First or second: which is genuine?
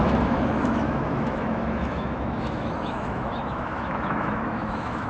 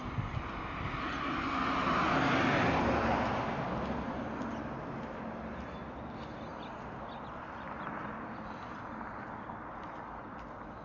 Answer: second